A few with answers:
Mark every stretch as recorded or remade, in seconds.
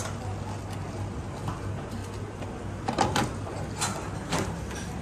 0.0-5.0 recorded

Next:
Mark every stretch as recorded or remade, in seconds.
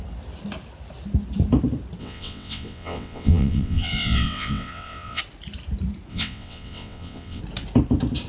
0.0-2.0 recorded; 2.0-5.2 remade; 5.2-6.1 recorded; 6.1-7.4 remade; 7.4-8.3 recorded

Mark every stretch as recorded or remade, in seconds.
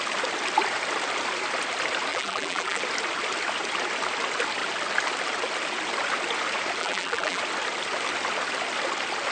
0.0-2.1 recorded; 2.1-2.8 remade; 2.8-6.8 recorded; 6.8-7.4 remade; 7.4-9.3 recorded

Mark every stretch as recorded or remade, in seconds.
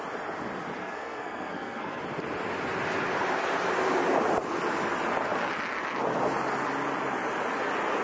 0.0-0.8 recorded; 0.8-2.0 remade; 2.0-8.0 recorded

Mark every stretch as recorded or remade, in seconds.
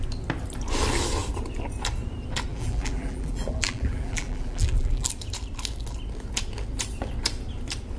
0.0-2.5 recorded; 2.5-5.1 remade; 5.1-8.0 recorded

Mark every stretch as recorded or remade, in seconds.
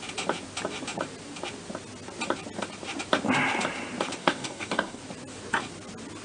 0.0-4.2 recorded; 4.2-5.0 remade; 5.0-6.2 recorded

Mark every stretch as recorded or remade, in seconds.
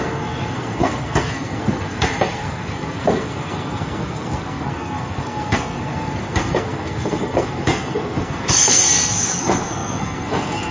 0.0-10.7 remade